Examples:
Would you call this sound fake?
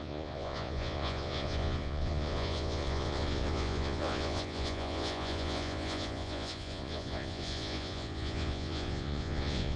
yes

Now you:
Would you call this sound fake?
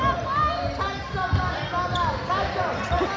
no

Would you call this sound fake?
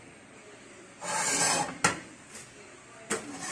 no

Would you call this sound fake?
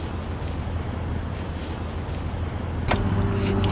no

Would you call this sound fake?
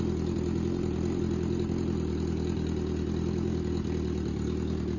no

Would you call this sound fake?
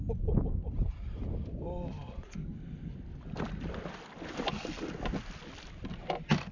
no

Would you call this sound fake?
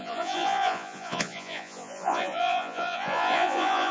yes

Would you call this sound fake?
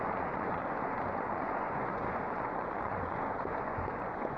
yes